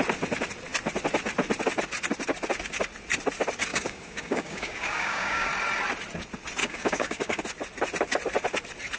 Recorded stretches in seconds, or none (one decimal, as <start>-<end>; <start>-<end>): 0.0-3.7; 5.5-6.6; 7.4-9.0